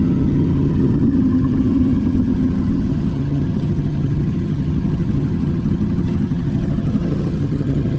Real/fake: fake